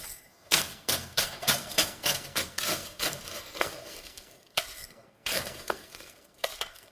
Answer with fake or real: fake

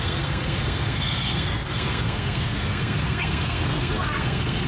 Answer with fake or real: fake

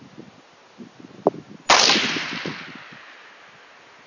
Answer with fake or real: real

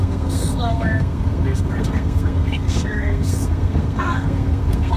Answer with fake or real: fake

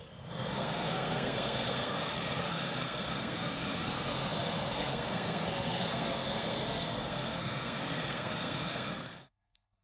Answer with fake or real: fake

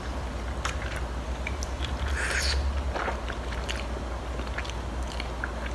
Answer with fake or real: real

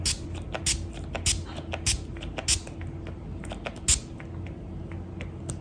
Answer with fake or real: real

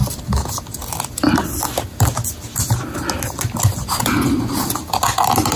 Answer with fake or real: real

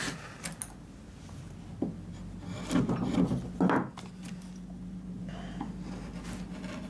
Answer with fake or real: real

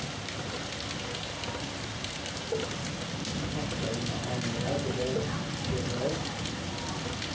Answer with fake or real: real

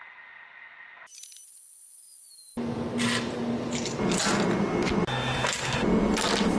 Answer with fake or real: real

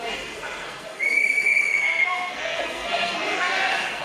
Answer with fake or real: fake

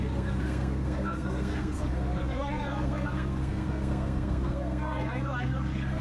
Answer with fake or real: fake